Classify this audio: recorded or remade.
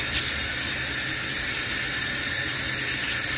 recorded